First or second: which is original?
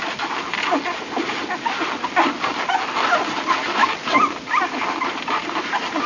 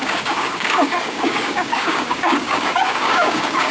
first